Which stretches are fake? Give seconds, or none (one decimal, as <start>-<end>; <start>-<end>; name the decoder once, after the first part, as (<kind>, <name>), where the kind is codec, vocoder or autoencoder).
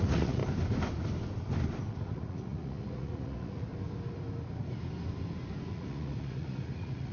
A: 0.0-0.4 (vocoder, Vocos); 1.9-3.7; 5.7-7.1